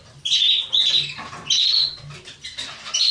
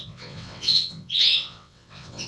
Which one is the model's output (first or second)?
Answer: second